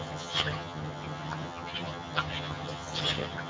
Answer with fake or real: fake